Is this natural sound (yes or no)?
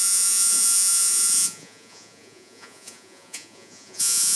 no